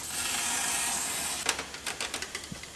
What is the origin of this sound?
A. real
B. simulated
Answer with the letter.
A